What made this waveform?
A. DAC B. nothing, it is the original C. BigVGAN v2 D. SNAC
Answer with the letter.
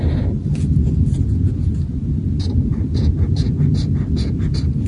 B